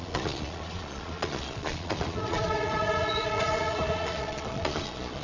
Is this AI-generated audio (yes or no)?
yes